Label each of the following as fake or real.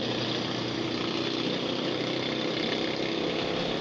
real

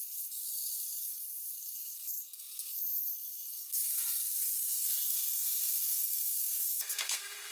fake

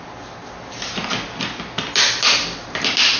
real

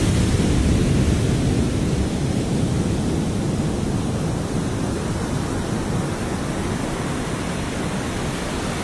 real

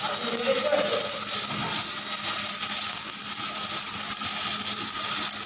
real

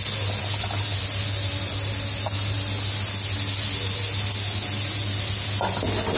real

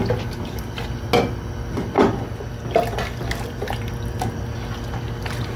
real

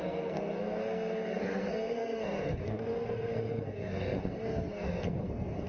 fake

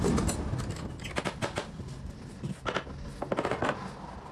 real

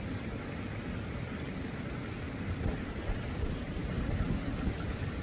real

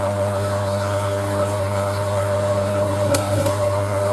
fake